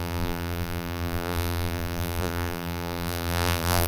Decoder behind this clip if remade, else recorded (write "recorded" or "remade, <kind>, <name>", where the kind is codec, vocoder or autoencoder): remade, vocoder, BigVGAN v2